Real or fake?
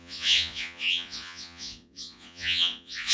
fake